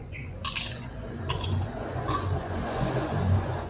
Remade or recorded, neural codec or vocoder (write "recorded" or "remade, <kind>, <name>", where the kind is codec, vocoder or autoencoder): remade, vocoder, Vocos